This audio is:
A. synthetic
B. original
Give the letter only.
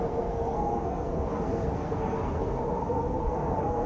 A